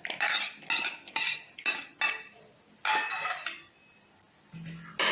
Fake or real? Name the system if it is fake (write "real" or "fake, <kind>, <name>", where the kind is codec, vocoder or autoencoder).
real